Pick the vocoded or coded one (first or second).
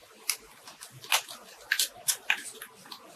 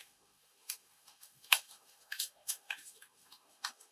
second